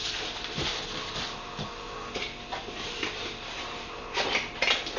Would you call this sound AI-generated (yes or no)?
no